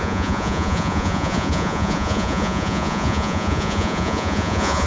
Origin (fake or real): fake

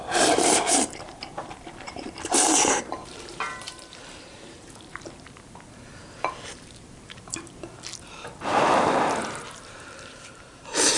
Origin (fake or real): fake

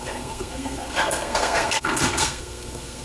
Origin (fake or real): fake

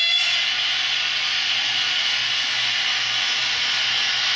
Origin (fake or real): real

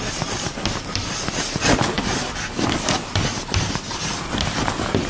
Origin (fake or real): real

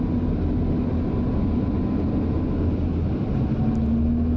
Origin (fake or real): real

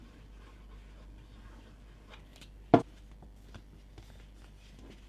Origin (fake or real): real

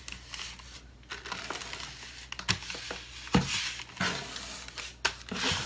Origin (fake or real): real